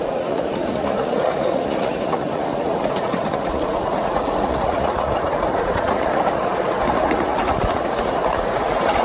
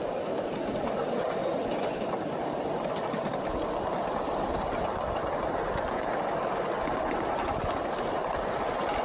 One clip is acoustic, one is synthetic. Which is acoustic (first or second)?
second